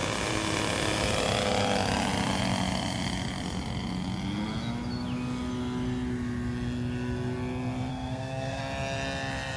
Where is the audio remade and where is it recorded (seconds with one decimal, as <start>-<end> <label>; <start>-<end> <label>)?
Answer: 0.0-7.9 recorded; 7.9-8.6 remade; 8.6-9.6 recorded